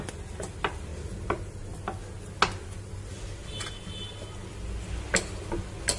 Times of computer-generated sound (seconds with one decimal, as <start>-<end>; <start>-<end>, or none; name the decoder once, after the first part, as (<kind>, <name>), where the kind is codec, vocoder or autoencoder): none